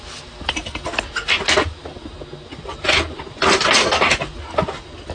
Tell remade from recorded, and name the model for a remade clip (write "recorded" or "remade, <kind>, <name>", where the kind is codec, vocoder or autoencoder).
recorded